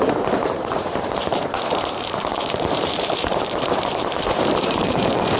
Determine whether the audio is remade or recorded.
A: remade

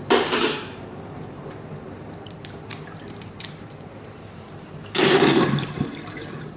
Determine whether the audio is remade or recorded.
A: remade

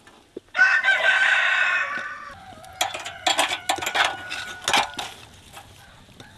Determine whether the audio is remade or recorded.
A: recorded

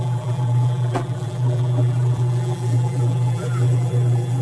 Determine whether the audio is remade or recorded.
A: remade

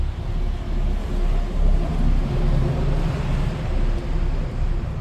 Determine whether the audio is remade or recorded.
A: recorded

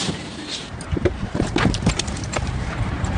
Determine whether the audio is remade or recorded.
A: remade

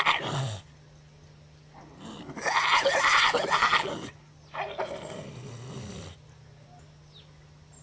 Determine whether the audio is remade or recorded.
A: recorded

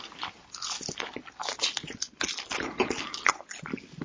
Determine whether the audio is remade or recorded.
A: recorded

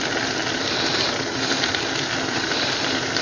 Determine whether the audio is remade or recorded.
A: remade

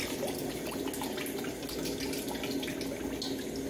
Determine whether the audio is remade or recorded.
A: recorded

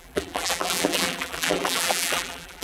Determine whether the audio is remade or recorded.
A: remade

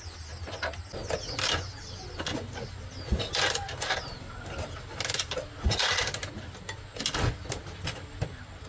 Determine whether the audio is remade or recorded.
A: recorded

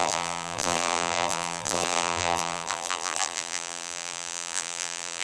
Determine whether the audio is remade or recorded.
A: remade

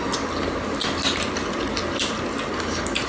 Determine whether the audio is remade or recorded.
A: recorded